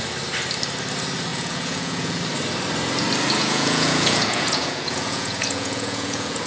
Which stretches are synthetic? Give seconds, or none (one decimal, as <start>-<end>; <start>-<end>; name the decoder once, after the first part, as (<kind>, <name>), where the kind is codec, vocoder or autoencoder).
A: 1.3-2.2 (vocoder, Vocos); 3.4-6.5